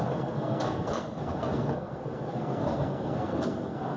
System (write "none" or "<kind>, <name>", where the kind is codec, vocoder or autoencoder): codec, SNAC